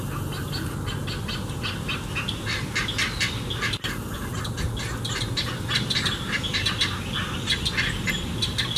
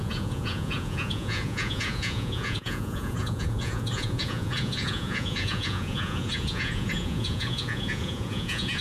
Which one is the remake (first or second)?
second